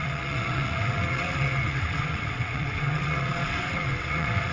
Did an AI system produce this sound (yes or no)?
yes